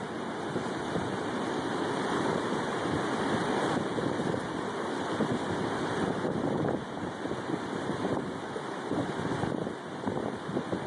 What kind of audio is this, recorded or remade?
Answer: remade